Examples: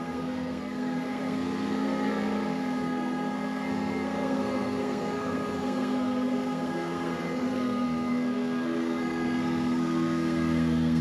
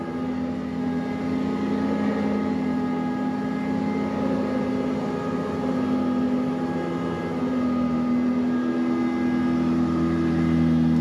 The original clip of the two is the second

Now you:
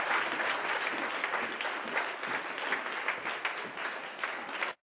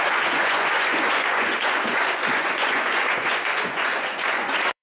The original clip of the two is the first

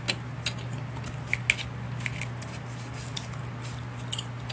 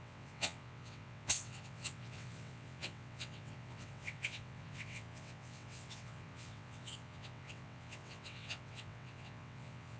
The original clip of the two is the first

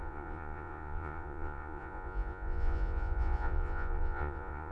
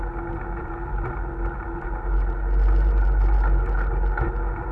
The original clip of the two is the second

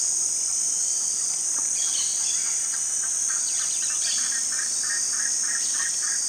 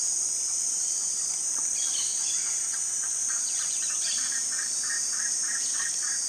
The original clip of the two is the first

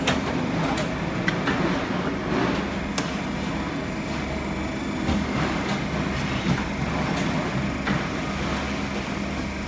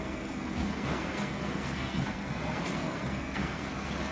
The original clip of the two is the first